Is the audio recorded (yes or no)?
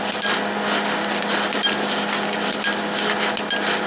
yes